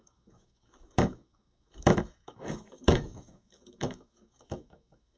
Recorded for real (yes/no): no